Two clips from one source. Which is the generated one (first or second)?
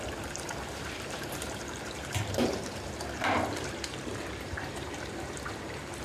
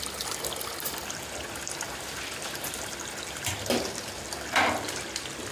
first